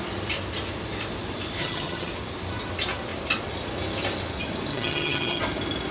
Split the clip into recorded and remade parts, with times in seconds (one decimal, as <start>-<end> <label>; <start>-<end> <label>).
0.0-1.6 recorded; 1.6-2.1 remade; 2.1-4.7 recorded; 4.7-5.4 remade; 5.4-5.9 recorded